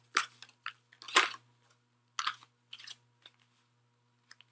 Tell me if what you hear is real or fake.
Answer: real